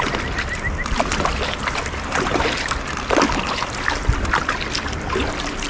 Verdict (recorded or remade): recorded